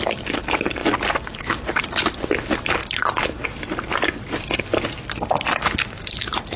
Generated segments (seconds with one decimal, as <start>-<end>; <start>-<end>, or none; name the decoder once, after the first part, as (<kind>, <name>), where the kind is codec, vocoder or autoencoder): none